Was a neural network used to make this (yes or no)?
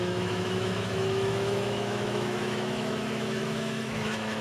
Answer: yes